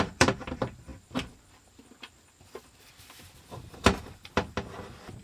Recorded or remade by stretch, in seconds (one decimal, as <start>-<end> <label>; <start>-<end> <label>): 0.0-5.2 remade